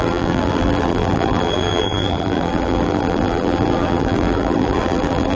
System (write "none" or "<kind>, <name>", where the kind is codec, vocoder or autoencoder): vocoder, BigVGAN v2